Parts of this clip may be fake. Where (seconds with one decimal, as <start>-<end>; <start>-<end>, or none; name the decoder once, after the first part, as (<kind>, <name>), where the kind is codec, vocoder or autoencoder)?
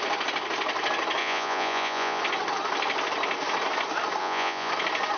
1.2-2.2 (vocoder, Vocos); 4.2-4.7